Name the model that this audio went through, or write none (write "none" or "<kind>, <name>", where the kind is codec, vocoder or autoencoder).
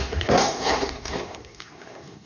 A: codec, SNAC